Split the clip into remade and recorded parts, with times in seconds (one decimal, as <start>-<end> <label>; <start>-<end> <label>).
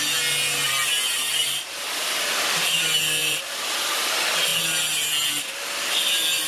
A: 0.0-3.2 recorded; 3.2-4.1 remade; 4.1-6.5 recorded